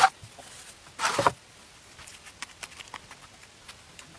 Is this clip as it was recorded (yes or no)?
yes